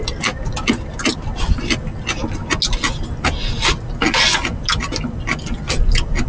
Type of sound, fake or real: real